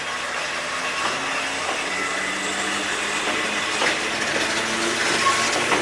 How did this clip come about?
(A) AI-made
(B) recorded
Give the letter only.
B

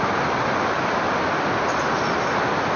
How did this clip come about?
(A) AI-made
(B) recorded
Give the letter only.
B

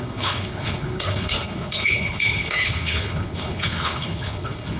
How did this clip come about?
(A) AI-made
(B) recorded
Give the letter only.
A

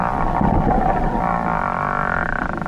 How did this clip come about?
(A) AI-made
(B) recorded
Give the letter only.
B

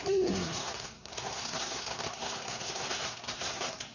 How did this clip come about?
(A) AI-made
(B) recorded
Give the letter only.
A